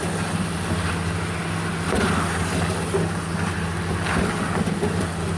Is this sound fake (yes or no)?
no